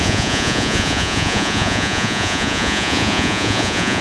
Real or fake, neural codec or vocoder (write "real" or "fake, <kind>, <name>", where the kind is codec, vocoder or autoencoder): fake, vocoder, Vocos